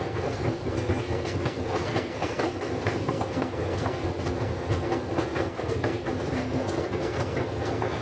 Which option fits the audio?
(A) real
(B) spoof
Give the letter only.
B